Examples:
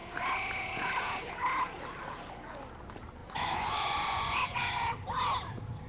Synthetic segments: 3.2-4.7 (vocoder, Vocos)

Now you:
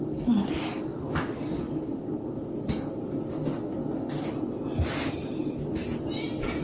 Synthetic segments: none

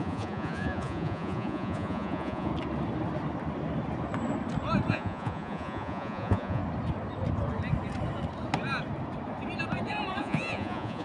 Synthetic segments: 0.0-2.5 (vocoder, Vocos); 4.9-6.6; 10.2-11.0

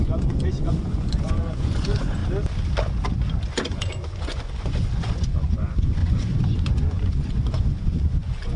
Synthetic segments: 0.0-2.2 (vocoder, Vocos); 3.5-8.6

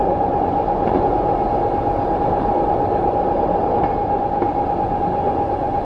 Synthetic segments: 0.0-1.3 (vocoder, Vocos); 4.8-5.8

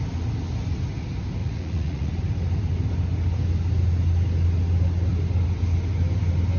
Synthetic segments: 1.4-2.1 (vocoder, Vocos)

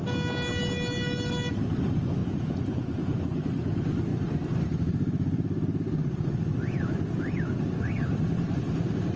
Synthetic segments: 2.2-3.2 (vocoder, Vocos)

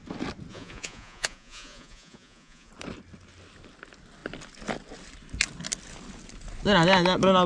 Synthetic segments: 0.5-2.7 (vocoder, Vocos)